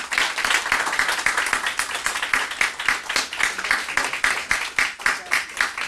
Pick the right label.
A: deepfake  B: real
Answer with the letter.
B